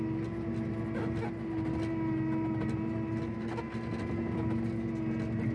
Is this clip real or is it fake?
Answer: real